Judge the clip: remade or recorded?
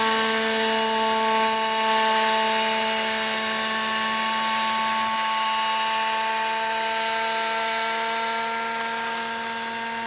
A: recorded